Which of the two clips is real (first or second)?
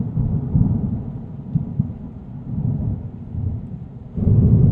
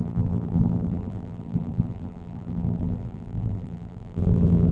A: first